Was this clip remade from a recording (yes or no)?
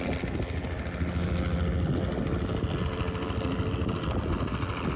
no